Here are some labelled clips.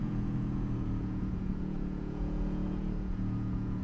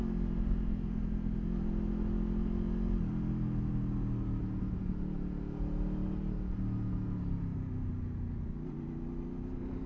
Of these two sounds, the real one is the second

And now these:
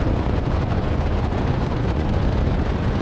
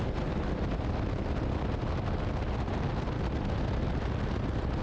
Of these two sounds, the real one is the second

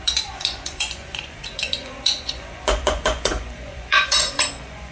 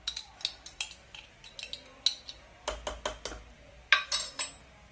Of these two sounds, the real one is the second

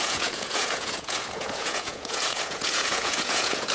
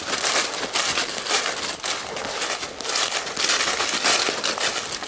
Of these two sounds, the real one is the second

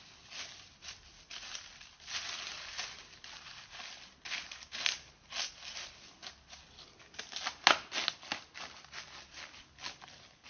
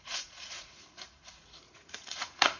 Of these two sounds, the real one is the first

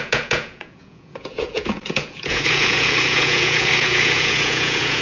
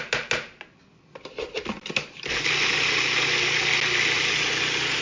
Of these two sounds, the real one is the second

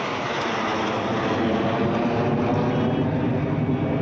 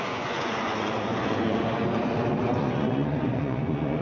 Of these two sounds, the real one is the first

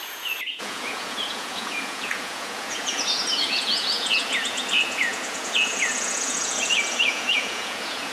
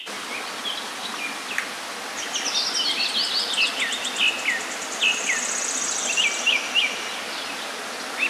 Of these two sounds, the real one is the second